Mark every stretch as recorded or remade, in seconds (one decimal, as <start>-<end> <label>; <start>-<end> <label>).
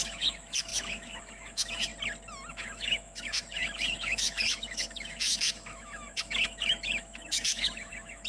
0.0-1.9 remade; 1.9-2.5 recorded; 2.5-8.3 remade